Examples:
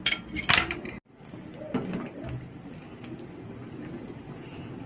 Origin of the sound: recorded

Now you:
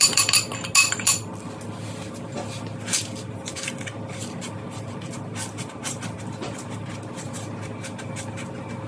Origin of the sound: recorded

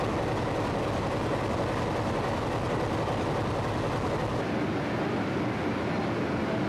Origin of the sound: recorded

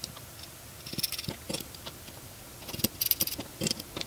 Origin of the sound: recorded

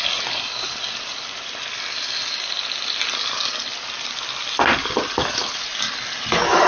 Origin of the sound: recorded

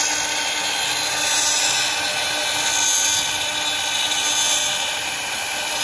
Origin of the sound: recorded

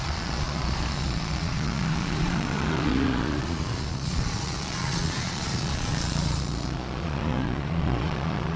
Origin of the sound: remade